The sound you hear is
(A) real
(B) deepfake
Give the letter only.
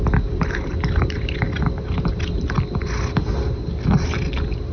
A